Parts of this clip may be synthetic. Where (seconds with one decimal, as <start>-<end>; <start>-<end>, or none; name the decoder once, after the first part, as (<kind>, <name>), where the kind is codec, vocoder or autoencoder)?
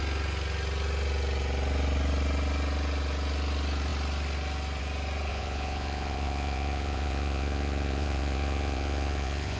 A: 5.3-9.6 (vocoder, Vocos)